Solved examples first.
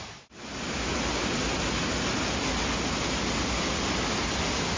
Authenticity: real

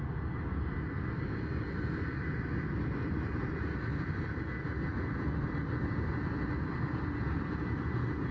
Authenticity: real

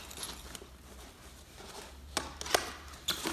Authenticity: real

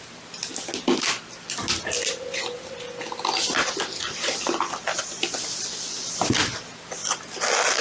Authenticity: real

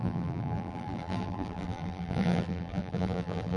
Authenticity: fake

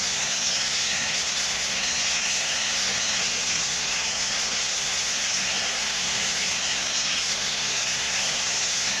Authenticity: fake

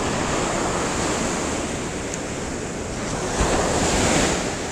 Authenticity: real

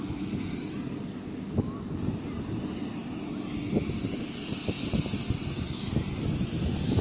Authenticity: real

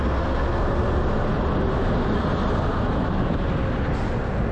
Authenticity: real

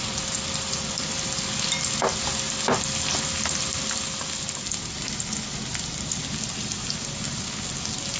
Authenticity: real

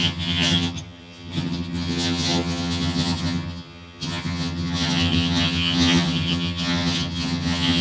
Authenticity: fake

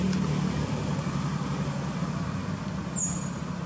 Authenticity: real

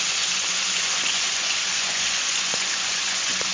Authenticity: fake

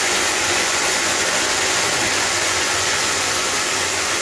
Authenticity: fake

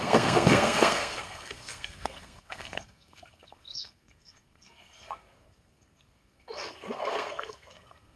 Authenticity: fake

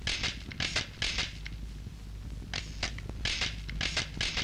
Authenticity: real